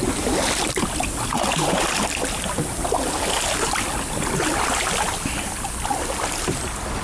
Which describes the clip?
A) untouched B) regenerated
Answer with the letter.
A